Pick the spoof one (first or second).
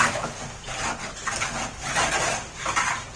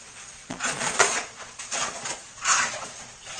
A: second